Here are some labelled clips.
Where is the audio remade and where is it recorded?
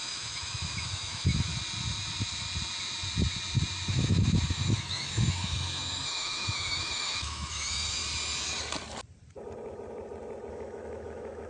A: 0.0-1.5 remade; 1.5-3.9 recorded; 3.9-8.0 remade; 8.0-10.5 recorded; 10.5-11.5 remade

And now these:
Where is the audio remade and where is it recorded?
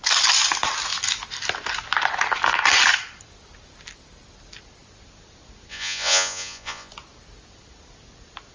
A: 0.0-5.7 recorded; 5.7-6.9 remade; 6.9-8.5 recorded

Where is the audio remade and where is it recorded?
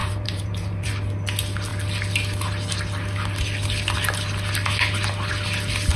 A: 0.0-0.9 remade; 0.9-6.0 recorded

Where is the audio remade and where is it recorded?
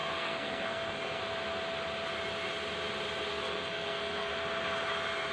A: 0.0-1.2 remade; 1.2-3.3 recorded; 3.3-4.3 remade; 4.3-5.3 recorded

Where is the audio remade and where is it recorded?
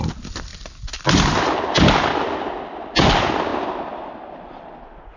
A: 0.0-5.2 recorded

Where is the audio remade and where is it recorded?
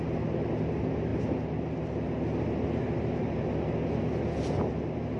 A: 0.0-5.2 recorded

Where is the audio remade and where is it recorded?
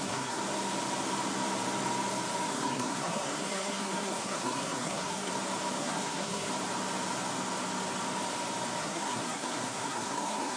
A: 0.0-0.4 remade; 0.4-2.5 recorded; 2.5-5.3 remade; 5.3-5.8 recorded; 5.8-6.5 remade; 6.5-8.8 recorded; 8.8-10.6 remade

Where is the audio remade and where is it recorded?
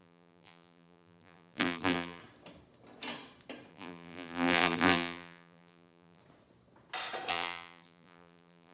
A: 0.0-2.2 remade; 2.2-3.7 recorded; 3.7-6.2 remade; 6.2-7.3 recorded; 7.3-8.7 remade